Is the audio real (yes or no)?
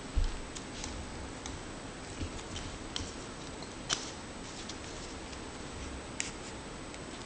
yes